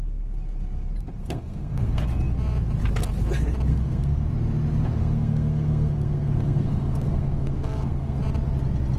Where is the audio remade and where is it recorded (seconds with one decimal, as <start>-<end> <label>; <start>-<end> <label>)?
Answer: 0.0-1.2 recorded; 1.2-2.0 remade; 2.0-3.7 recorded; 3.7-4.3 remade; 4.3-5.0 recorded; 5.0-8.2 remade; 8.2-9.0 recorded